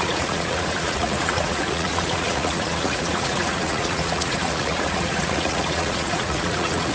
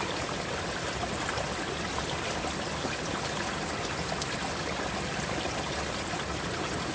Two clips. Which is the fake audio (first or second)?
first